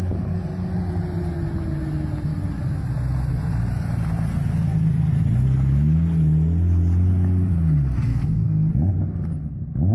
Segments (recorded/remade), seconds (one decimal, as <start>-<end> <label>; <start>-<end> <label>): 0.0-8.1 recorded; 8.1-8.7 remade; 8.7-9.9 recorded